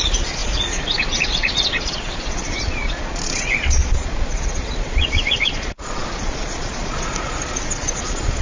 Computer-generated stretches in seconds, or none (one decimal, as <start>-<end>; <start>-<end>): 0.0-8.4